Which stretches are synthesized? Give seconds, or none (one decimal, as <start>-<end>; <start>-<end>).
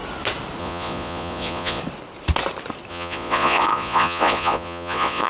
0.6-1.8; 2.9-5.3